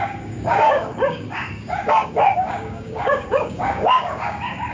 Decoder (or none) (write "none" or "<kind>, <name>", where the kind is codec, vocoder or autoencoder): codec, DAC